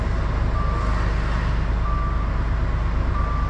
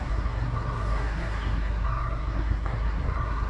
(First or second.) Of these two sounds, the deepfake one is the second